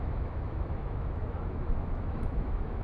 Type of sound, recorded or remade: remade